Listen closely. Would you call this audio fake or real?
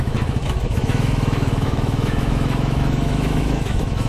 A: fake